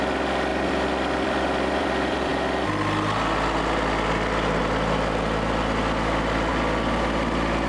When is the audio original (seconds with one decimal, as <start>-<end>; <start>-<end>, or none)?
0.0-0.5; 2.3-7.7